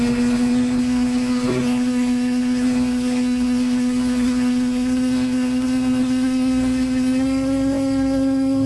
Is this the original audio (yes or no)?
no